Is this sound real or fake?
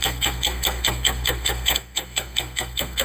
fake